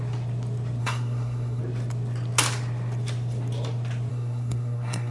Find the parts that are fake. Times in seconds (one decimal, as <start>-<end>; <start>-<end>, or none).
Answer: 0.8-1.6; 4.1-5.1